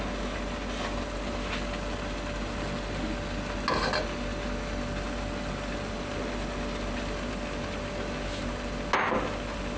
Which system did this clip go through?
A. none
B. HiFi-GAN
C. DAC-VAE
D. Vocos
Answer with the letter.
A